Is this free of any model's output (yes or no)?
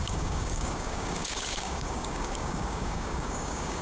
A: no